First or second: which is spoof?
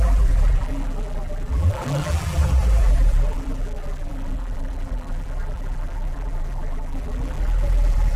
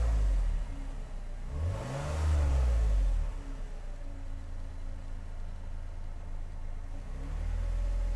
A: first